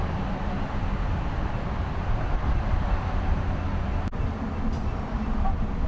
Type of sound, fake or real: real